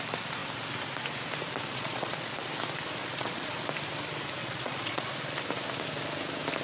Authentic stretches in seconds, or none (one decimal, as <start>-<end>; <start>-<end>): 0.0-1.7; 2.3-3.0; 3.5-4.4; 5.1-6.6